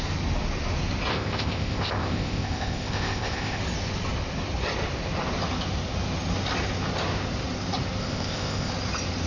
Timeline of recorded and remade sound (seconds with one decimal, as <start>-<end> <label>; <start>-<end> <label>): 0.0-1.1 recorded; 1.1-3.6 remade; 3.6-8.0 recorded; 8.0-8.7 remade; 8.7-9.3 recorded